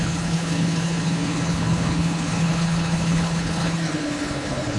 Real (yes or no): no